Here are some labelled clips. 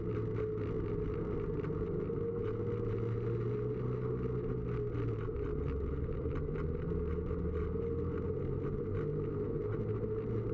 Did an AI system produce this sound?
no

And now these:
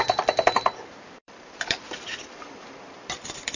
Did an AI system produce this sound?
yes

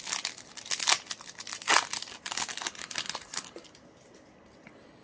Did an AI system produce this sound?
no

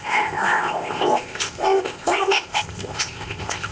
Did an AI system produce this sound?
yes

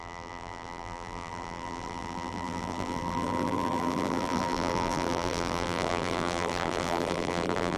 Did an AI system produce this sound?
yes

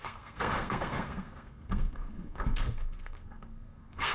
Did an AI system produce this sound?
yes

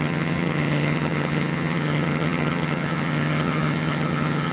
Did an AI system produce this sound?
yes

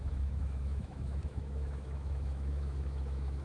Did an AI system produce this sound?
yes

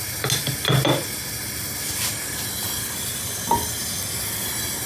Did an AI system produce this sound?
no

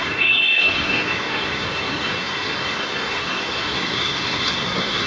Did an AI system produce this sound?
yes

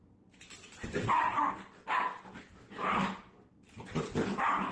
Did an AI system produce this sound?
no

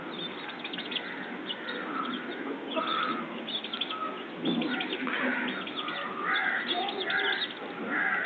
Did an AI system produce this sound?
no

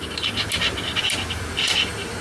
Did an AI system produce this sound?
no